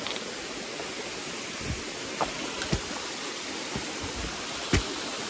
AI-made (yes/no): no